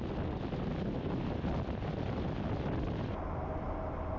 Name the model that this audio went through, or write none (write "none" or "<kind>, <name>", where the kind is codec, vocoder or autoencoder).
none